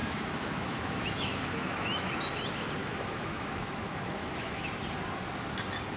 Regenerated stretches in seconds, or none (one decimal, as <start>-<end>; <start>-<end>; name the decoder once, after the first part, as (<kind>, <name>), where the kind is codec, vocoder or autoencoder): 0.0-2.1 (autoencoder, DAC-VAE); 2.8-4.7